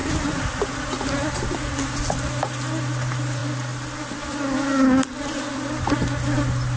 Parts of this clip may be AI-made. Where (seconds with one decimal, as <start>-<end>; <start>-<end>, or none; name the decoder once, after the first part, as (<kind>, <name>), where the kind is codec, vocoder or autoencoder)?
none